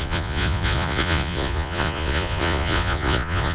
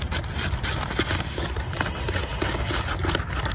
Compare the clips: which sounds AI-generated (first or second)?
first